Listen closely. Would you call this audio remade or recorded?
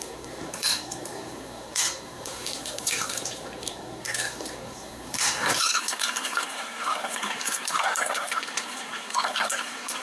remade